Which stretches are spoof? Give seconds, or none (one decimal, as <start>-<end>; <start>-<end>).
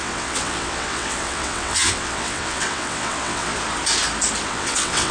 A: 0.0-3.5; 4.5-5.1